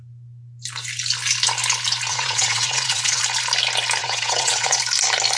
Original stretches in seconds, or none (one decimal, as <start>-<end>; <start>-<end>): 0.0-2.1; 3.2-4.0; 4.8-5.4